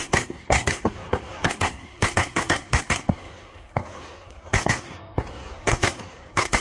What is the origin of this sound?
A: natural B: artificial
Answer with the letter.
B